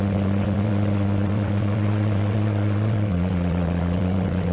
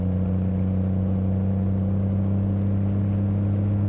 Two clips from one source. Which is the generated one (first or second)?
first